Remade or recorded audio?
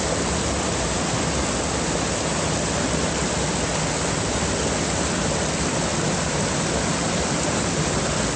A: recorded